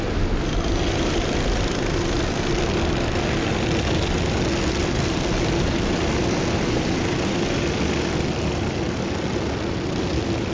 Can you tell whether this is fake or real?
real